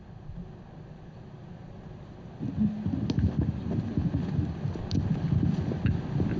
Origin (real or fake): real